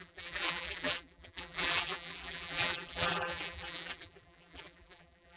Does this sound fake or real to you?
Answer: fake